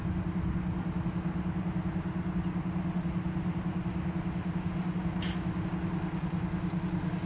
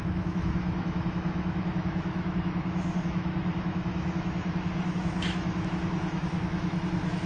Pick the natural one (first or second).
first